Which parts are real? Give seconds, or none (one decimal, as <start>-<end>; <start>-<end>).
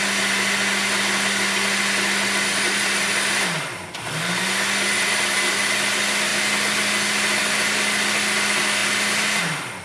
0.0-9.8